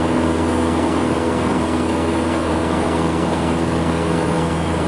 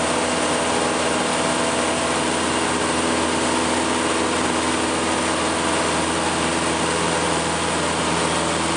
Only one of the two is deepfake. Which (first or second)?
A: first